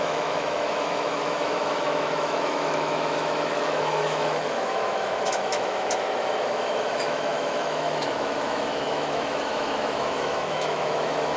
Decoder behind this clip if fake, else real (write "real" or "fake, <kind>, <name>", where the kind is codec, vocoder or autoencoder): fake, autoencoder, DAC-VAE